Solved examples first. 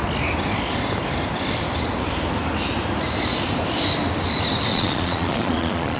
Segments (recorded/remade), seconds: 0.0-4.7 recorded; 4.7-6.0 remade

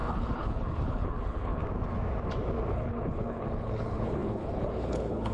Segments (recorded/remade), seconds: 0.0-1.6 remade; 1.6-2.7 recorded; 2.7-5.3 remade